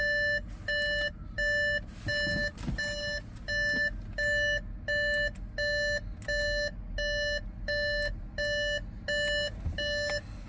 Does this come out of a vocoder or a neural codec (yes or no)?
no